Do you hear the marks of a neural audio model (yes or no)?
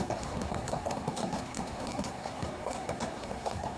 yes